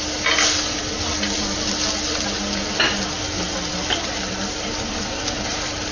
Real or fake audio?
real